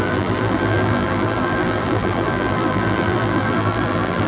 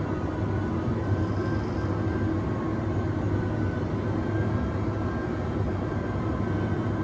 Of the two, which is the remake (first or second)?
first